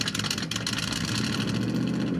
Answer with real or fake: real